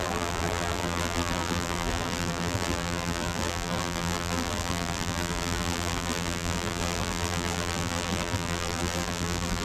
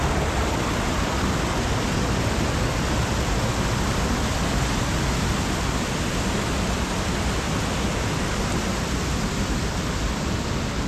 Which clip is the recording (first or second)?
second